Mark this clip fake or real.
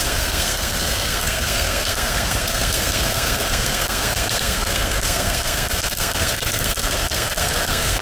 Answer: fake